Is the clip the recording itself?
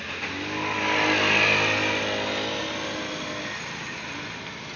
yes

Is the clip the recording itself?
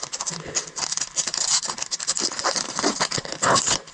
yes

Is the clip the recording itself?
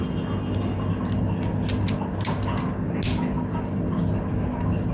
yes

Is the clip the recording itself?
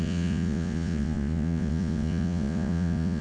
no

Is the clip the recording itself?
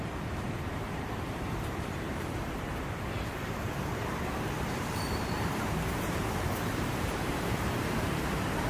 no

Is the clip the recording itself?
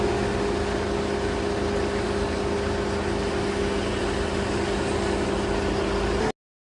yes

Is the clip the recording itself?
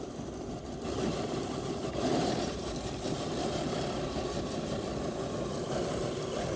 yes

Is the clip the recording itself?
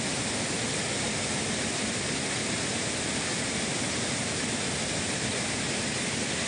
yes